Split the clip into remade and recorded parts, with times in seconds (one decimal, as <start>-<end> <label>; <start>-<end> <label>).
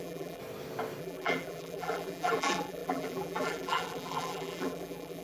0.0-0.4 remade; 0.4-1.0 recorded; 1.0-5.2 remade